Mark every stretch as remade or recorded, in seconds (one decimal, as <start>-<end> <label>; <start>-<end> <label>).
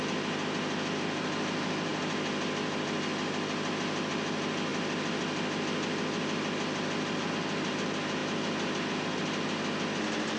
0.0-10.4 recorded